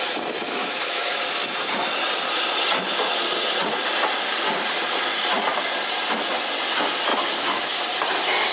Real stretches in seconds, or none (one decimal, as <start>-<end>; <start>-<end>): 0.0-0.6; 1.2-7.1; 7.8-8.5